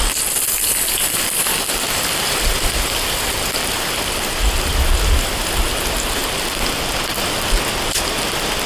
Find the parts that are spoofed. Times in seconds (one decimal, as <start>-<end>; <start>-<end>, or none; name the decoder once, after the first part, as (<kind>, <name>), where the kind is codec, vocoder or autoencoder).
none